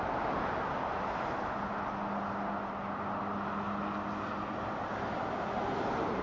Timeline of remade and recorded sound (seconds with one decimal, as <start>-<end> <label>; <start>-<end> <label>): 0.0-6.2 recorded